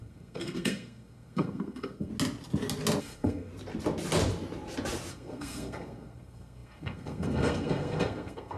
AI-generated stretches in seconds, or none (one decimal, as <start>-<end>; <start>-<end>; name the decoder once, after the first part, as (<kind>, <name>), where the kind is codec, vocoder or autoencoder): 0.0-2.1 (codec, SNAC); 3.0-3.5; 5.1-8.6